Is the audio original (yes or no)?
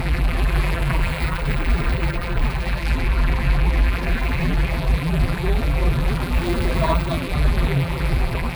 no